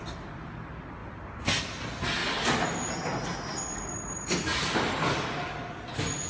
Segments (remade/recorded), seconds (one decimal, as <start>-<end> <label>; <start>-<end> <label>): 0.0-6.3 recorded